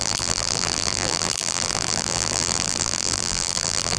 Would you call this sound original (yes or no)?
no